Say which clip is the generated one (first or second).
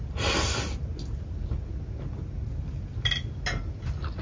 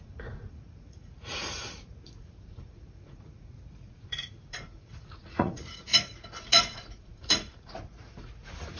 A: second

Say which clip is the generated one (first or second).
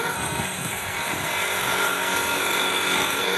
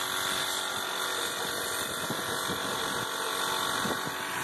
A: first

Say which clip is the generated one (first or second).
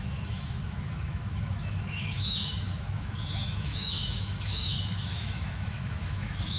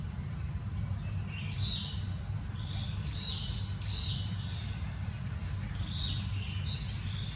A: first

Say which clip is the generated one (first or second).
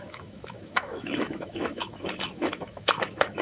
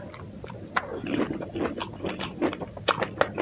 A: first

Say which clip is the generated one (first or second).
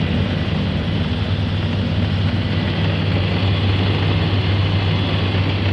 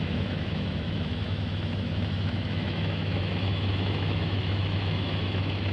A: second